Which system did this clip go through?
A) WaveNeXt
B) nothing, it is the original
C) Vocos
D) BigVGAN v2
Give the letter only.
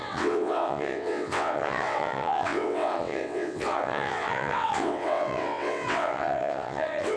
A